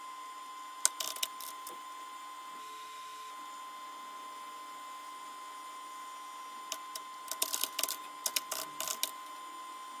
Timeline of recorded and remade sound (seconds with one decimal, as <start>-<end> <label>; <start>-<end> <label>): 0.0-2.6 recorded; 2.6-3.3 remade; 3.3-10.0 recorded